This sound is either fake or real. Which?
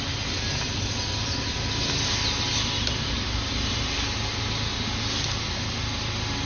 real